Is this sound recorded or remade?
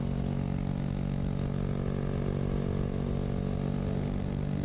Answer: recorded